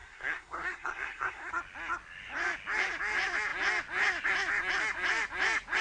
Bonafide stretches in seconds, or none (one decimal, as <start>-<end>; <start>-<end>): 1.5-5.8